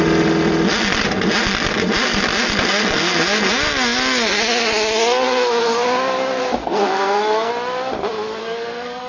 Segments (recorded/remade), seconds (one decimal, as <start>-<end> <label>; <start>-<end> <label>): 0.0-6.6 recorded; 6.6-7.5 remade; 7.5-8.4 recorded; 8.4-9.1 remade